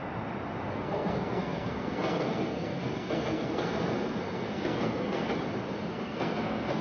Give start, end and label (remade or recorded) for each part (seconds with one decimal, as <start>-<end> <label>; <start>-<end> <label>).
0.0-0.7 recorded; 0.7-5.3 remade; 5.3-5.9 recorded; 5.9-6.8 remade